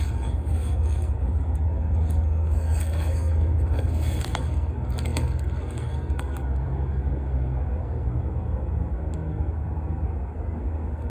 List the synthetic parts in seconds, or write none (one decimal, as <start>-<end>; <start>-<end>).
0.0-11.1